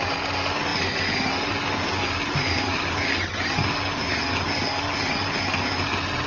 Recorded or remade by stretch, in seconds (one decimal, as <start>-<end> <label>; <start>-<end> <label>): 0.0-6.3 recorded